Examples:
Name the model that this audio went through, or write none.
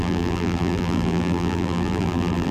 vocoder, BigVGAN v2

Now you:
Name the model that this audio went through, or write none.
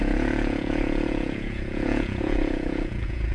vocoder, Vocos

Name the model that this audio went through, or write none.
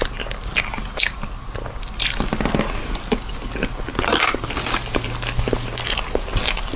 none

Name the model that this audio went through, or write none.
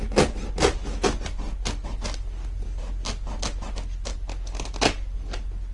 none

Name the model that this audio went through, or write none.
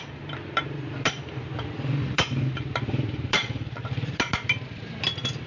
vocoder, BigVGAN v2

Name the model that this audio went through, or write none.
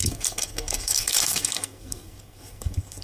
codec, SNAC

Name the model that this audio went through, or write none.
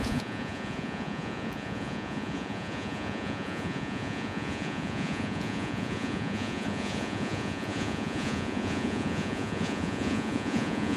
vocoder, Vocos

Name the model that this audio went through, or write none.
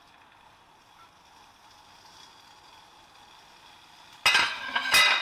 none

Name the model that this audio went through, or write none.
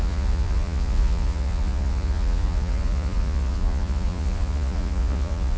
vocoder, Vocos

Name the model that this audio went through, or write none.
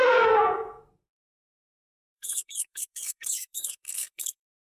codec, SNAC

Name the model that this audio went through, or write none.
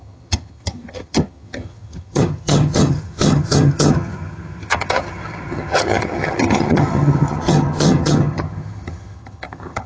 vocoder, HiFi-GAN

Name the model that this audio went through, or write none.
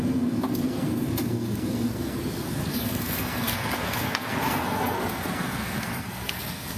codec, SNAC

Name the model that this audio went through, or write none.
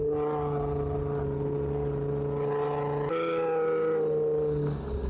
none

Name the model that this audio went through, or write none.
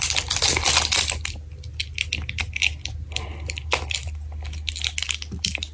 none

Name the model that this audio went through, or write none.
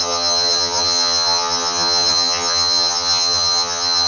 vocoder, HiFi-GAN